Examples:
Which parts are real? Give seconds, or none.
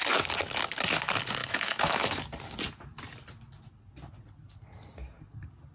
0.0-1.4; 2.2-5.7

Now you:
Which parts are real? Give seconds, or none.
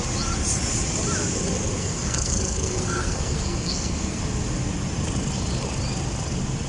0.0-1.8; 4.2-6.7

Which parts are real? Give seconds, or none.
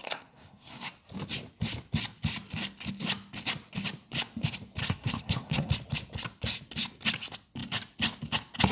0.9-4.8; 5.7-8.7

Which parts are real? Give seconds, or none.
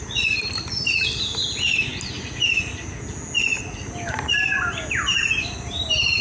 0.0-6.2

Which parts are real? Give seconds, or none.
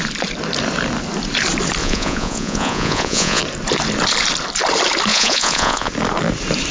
0.0-1.8; 3.4-5.1; 5.9-6.7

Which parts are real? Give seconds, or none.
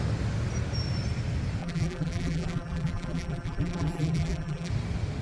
0.0-1.6; 4.7-5.2